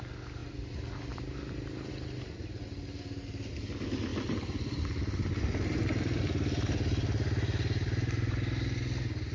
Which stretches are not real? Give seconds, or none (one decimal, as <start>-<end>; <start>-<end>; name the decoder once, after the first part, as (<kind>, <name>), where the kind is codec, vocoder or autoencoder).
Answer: 0.4-1.9 (vocoder, BigVGAN v2); 4.1-6.2